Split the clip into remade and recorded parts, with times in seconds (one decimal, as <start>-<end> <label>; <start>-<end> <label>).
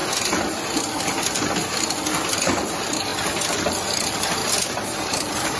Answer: 0.0-4.4 recorded; 4.4-5.6 remade